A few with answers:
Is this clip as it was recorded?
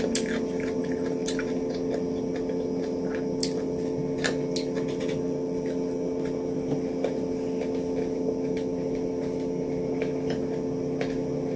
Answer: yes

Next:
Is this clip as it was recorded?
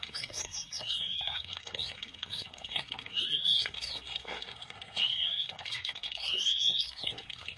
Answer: no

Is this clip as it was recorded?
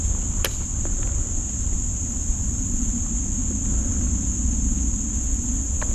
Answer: yes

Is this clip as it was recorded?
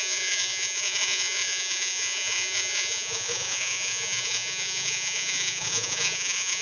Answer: no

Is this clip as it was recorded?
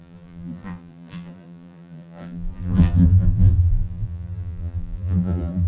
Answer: no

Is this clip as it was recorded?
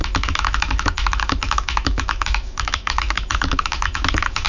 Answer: no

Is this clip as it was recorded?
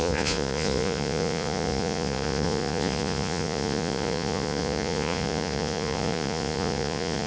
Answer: no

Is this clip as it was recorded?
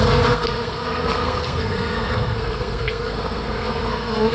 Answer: no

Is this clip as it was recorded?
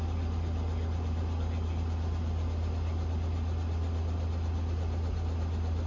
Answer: yes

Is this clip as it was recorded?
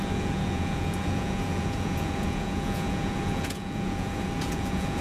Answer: no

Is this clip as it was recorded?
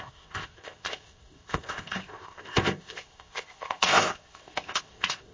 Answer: no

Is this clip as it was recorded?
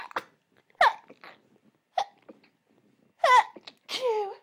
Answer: yes